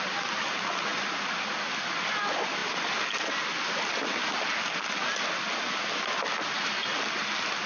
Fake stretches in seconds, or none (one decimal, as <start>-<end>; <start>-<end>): none